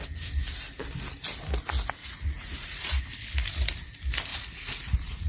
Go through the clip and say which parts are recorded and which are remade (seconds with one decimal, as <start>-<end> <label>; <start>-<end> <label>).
0.0-2.0 recorded; 2.0-3.0 remade; 3.0-4.3 recorded; 4.3-5.3 remade